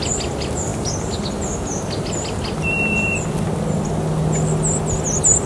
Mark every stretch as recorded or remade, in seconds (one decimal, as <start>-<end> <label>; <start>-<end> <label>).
0.0-5.5 recorded